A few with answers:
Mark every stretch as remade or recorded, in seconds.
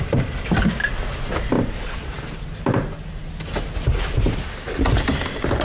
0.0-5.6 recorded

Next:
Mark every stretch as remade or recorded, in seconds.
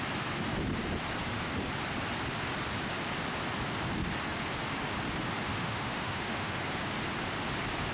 0.0-5.5 recorded; 5.5-6.6 remade; 6.6-7.9 recorded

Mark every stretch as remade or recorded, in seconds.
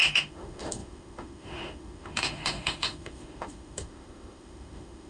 0.0-5.1 remade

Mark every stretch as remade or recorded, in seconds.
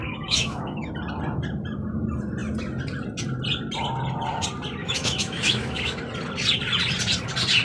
0.0-0.9 remade; 0.9-4.8 recorded; 4.8-6.0 remade; 6.0-7.6 recorded